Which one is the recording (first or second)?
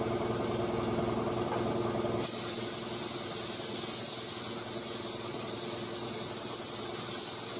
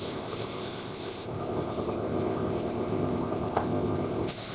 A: first